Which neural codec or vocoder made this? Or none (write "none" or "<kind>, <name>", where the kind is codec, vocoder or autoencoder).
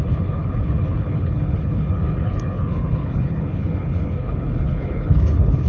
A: codec, HILCodec